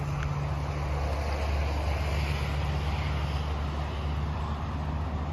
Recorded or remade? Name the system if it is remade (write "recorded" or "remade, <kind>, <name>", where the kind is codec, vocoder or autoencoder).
recorded